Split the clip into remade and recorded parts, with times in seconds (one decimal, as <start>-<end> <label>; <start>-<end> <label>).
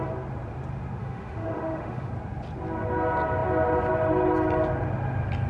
0.0-1.0 recorded; 1.0-2.1 remade; 2.1-5.5 recorded